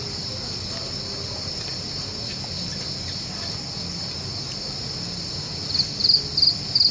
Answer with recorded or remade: recorded